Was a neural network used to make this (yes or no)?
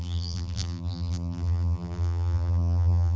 yes